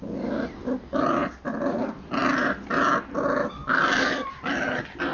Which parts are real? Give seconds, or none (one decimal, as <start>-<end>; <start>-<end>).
0.0-5.1